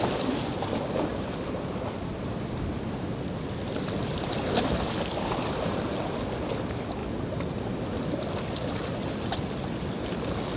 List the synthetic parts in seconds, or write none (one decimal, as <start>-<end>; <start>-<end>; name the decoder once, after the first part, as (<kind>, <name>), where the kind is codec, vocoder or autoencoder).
none